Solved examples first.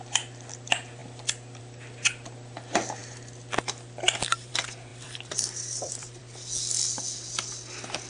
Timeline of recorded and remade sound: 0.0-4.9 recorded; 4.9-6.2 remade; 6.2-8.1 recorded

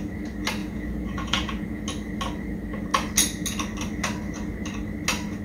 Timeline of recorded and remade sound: 0.0-0.6 recorded; 0.6-1.8 remade; 1.8-5.4 recorded

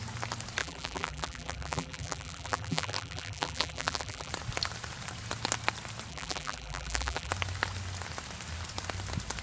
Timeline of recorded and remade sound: 0.0-0.6 recorded; 0.6-4.3 remade; 4.3-6.1 recorded; 6.1-7.3 remade; 7.3-9.4 recorded